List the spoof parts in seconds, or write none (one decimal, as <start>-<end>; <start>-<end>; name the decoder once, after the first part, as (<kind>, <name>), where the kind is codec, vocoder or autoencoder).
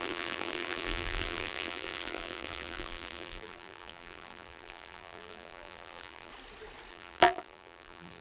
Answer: 0.0-6.3 (vocoder, BigVGAN v2); 6.9-8.2